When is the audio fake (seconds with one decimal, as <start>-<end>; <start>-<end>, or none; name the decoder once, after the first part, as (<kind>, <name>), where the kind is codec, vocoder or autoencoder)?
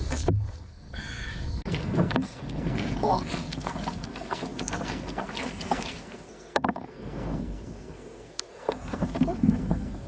0.0-10.1 (codec, SNAC)